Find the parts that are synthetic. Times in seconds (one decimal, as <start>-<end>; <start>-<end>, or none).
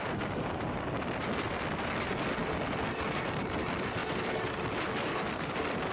2.4-3.4; 4.0-4.9